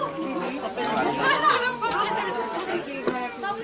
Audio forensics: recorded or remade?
recorded